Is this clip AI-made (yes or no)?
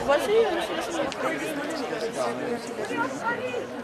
no